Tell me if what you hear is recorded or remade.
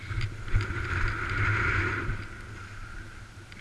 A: recorded